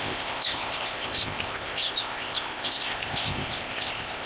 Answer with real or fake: fake